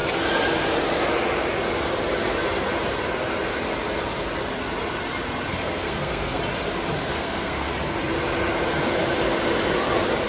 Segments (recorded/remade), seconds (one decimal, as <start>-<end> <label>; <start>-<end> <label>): 0.0-5.5 recorded; 5.5-6.4 remade; 6.4-7.1 recorded; 7.1-7.7 remade; 7.7-10.3 recorded